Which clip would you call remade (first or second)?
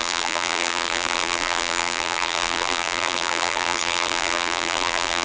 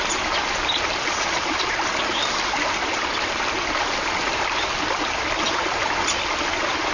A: first